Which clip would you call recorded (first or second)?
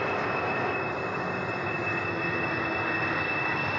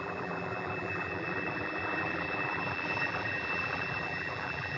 first